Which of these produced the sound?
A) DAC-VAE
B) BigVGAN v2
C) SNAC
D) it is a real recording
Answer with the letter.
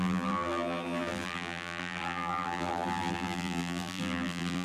B